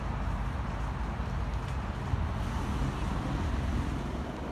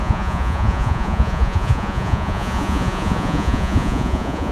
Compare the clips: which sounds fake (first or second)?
second